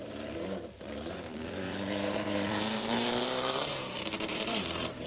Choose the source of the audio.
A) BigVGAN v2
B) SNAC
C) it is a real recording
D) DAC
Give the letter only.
A